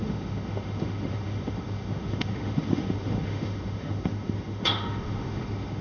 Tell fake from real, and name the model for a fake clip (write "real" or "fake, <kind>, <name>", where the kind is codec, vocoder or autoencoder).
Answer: fake, autoencoder, DAC-VAE